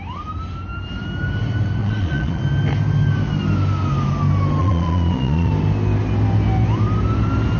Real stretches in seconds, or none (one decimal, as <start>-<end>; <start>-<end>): 0.0-1.8; 2.4-4.6; 5.5-7.6